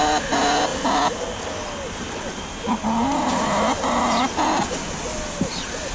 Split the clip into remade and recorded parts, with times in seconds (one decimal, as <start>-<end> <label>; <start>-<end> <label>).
0.0-5.9 recorded